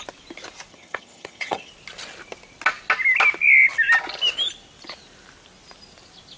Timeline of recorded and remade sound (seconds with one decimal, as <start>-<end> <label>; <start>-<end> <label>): 0.0-0.7 recorded; 0.7-1.7 remade; 1.7-6.4 recorded

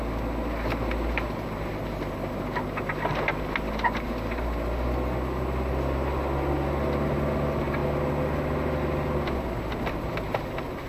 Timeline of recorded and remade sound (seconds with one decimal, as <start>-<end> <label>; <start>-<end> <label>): 0.0-10.9 recorded